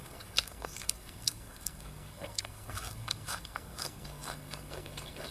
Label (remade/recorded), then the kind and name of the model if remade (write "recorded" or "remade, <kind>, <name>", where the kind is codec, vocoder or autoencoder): remade, codec, SNAC